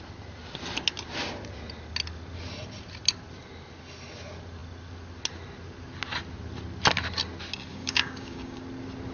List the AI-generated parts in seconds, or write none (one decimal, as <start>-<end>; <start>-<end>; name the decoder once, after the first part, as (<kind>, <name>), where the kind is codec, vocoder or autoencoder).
7.7-8.6 (codec, DAC)